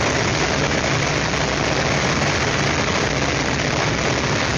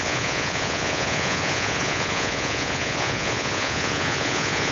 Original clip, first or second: first